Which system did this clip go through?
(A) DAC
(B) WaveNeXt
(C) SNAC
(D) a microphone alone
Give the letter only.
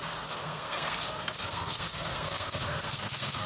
C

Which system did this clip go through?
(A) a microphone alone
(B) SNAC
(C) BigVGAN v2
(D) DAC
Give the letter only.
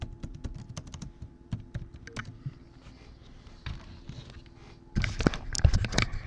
A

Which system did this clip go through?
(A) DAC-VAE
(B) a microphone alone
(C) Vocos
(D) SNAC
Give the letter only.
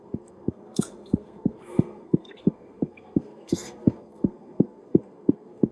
D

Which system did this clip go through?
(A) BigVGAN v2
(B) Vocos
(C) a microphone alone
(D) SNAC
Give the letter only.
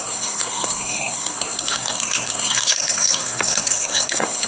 D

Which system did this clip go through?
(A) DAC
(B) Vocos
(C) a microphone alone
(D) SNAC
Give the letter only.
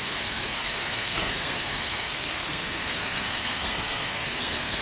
D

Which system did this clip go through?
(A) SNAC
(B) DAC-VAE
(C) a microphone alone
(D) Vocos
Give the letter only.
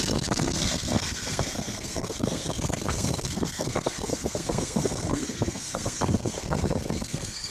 A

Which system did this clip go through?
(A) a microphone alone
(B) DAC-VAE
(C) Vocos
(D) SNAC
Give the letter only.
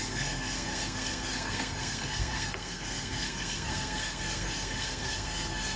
D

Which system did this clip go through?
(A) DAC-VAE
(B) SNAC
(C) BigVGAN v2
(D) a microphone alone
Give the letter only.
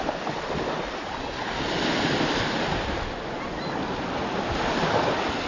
D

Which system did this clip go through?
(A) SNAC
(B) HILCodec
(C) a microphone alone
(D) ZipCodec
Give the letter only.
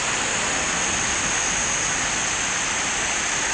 C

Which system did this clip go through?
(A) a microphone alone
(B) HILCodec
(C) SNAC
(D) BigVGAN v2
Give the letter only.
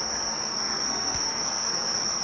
C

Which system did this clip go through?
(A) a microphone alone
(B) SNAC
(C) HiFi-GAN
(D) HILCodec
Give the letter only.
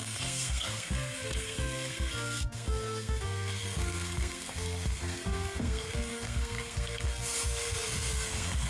B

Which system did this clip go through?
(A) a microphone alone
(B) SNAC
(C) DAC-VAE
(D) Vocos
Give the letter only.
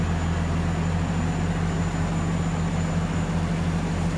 A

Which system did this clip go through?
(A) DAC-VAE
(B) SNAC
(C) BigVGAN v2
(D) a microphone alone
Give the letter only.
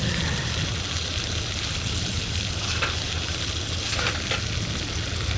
D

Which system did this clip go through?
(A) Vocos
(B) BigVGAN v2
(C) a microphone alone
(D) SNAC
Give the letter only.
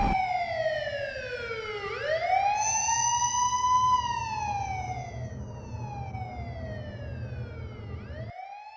C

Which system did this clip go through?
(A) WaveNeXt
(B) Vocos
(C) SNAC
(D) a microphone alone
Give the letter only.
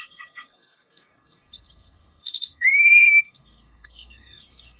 C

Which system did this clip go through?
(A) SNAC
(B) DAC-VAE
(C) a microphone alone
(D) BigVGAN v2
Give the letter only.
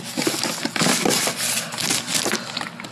C